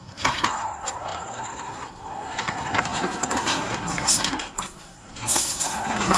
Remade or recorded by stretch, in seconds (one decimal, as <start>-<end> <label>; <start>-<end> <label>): 0.0-6.2 remade